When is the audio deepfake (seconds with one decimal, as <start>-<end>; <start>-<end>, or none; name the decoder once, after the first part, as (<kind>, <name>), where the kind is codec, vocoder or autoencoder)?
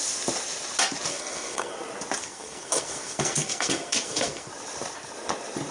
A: 1.1-1.7 (codec, SNAC); 2.2-4.5